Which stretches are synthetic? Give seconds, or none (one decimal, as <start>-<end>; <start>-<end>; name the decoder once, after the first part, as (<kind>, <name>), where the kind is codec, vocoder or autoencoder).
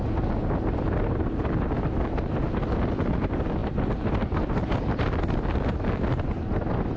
3.6-4.6 (vocoder, BigVGAN v2)